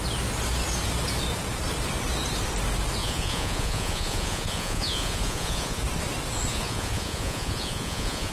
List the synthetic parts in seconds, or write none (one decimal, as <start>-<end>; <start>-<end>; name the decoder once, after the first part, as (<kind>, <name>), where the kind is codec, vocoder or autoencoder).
3.0-5.8 (vocoder, Vocos); 6.5-8.3